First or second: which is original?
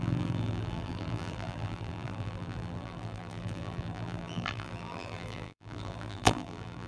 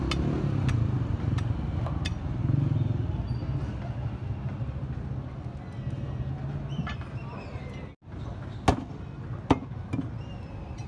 second